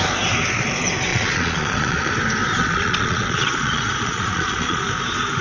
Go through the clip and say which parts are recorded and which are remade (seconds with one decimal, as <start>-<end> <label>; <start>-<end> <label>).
0.0-1.1 recorded; 1.1-2.1 remade; 2.1-2.6 recorded; 2.6-4.8 remade; 4.8-5.4 recorded